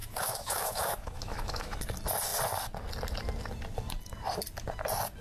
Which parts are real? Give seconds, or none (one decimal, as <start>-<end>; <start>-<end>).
1.8-5.2